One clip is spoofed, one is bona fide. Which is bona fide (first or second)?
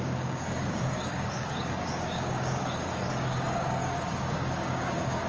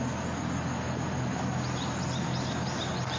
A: second